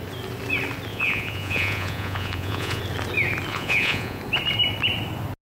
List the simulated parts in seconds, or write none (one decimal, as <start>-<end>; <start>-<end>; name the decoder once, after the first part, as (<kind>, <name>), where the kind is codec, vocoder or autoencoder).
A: 0.9-2.8 (vocoder, Vocos); 3.5-4.2